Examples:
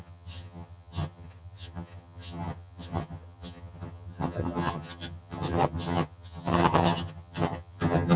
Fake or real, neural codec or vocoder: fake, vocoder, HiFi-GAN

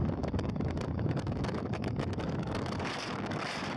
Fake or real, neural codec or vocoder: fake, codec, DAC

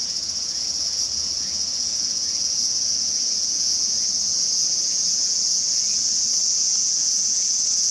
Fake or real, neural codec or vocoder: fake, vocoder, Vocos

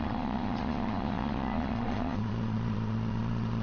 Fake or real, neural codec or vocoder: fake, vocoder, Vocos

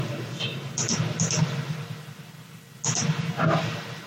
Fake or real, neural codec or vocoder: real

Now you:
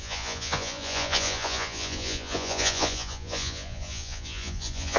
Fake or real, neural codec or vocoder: fake, vocoder, Vocos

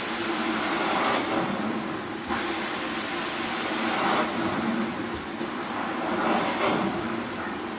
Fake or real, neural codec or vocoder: real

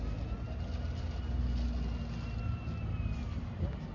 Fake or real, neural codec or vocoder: real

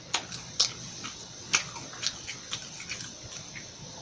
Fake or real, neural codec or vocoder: real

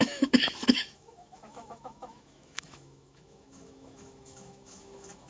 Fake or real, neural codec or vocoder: fake, autoencoder, DAC-VAE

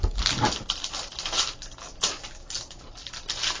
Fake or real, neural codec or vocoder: real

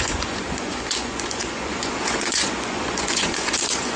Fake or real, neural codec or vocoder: fake, vocoder, Vocos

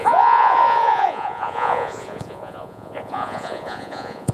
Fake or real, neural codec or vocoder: fake, vocoder, Vocos